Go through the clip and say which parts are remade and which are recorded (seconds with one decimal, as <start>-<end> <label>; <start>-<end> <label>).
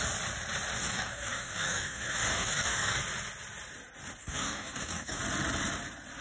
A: 0.0-0.8 recorded; 0.8-3.0 remade; 3.0-4.2 recorded; 4.2-5.2 remade; 5.2-6.2 recorded